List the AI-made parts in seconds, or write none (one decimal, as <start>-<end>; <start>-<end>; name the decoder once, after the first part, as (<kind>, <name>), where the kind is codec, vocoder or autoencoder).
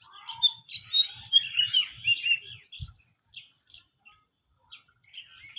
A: none